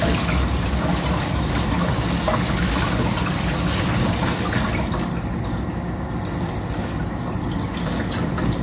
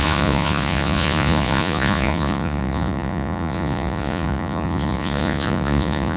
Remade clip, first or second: second